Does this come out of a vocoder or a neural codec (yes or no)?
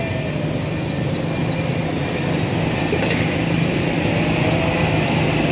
no